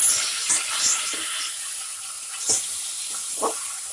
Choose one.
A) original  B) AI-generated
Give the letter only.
A